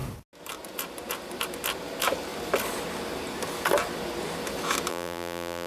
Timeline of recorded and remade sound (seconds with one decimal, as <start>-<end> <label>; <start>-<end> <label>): 0.0-4.9 recorded; 4.9-5.7 remade